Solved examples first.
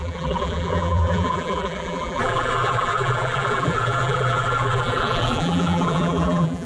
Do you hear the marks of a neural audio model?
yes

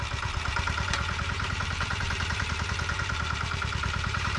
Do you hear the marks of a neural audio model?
yes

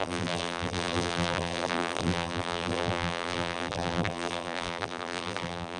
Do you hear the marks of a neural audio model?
yes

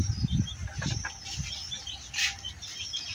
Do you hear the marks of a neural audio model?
no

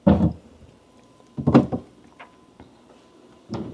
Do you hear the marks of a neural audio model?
yes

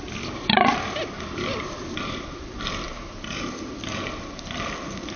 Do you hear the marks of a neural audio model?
yes